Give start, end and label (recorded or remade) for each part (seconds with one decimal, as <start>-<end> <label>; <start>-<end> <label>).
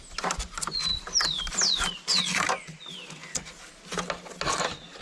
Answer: 0.0-5.0 recorded